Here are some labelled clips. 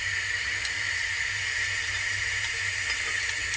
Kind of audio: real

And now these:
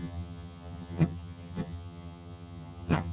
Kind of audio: fake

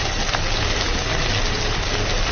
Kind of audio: real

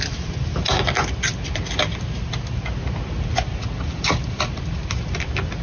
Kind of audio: real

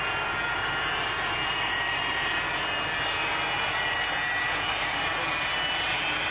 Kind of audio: real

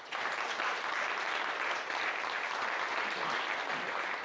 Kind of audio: real